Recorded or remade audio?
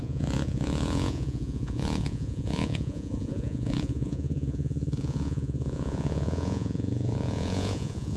remade